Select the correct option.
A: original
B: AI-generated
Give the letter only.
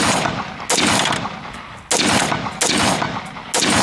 A